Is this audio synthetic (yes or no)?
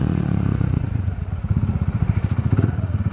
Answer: yes